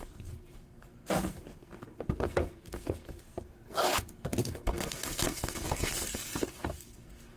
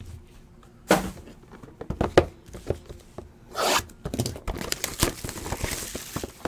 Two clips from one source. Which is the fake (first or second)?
first